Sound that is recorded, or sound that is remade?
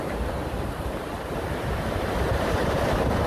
remade